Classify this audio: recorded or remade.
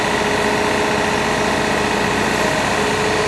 recorded